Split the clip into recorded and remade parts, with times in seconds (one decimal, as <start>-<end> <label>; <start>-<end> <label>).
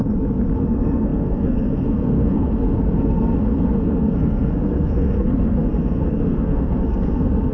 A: 0.0-0.6 recorded; 0.6-7.5 remade